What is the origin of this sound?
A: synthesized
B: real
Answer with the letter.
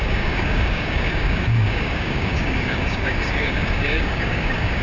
A